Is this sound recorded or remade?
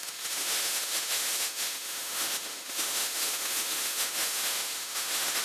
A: remade